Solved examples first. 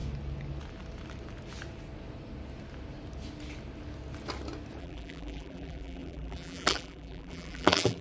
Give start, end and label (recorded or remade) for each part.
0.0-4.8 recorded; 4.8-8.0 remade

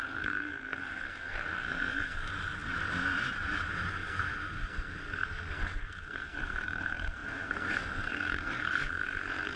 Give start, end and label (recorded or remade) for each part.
0.0-2.3 remade; 2.3-3.9 recorded; 3.9-9.6 remade